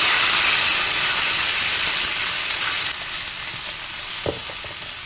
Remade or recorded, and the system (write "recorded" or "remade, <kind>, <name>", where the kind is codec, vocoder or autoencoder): recorded